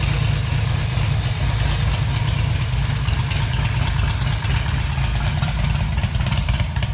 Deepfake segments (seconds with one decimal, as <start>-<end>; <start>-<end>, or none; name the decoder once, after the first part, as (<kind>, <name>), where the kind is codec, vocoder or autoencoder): 5.9-6.9 (vocoder, BigVGAN v2)